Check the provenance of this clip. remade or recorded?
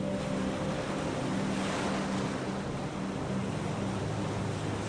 recorded